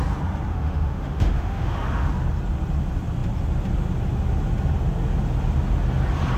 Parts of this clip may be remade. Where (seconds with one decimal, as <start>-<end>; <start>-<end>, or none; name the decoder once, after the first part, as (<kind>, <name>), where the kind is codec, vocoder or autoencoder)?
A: 0.5-2.1 (autoencoder, DAC-VAE)